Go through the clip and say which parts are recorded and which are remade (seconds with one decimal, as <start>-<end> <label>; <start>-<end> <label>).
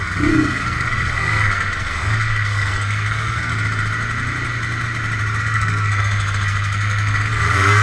0.0-3.5 remade; 3.5-5.4 recorded; 5.4-7.8 remade